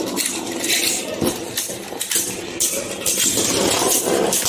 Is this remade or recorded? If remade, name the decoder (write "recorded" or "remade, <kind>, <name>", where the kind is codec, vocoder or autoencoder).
recorded